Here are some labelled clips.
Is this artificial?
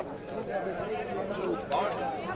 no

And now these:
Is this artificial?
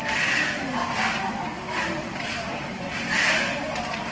yes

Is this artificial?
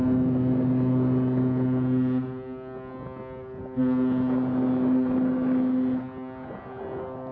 no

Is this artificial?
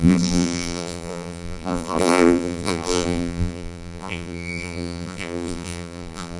yes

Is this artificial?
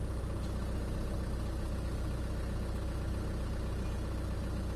no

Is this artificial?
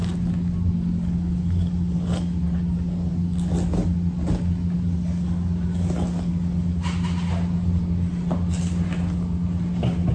no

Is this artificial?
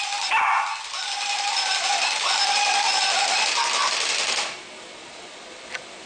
yes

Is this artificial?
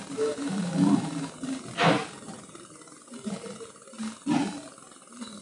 yes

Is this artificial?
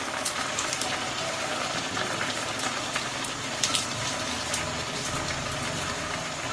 yes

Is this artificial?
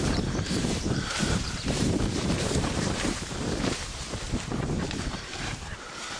yes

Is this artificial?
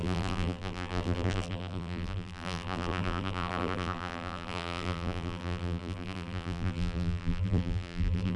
yes